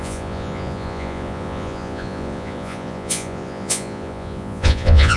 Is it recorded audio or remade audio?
remade